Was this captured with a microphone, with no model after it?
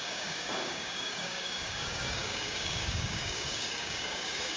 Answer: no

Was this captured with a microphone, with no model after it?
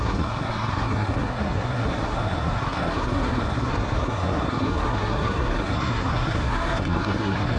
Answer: no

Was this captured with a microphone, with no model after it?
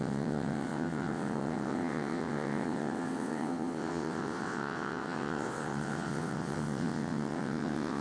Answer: no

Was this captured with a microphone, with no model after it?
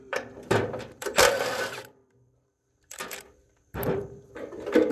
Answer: no